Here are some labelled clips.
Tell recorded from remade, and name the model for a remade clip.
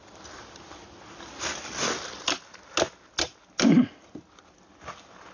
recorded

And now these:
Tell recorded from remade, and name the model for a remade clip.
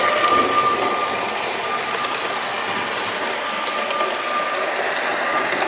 recorded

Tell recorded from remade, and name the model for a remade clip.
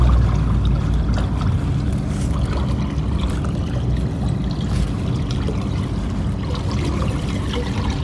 recorded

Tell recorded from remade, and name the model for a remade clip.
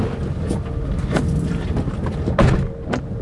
recorded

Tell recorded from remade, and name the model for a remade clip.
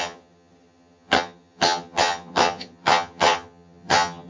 remade, vocoder, HiFi-GAN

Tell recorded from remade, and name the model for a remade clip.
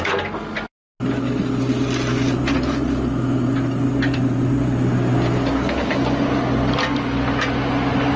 recorded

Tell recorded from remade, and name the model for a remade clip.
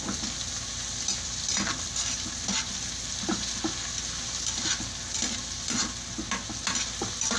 recorded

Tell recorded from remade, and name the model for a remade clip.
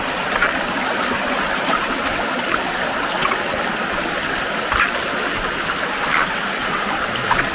recorded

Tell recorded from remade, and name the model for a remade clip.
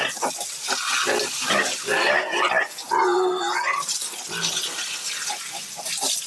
recorded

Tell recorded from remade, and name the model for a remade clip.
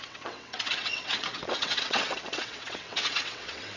remade, vocoder, WaveNeXt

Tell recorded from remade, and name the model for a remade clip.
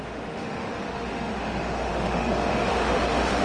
remade, autoencoder, DAC-VAE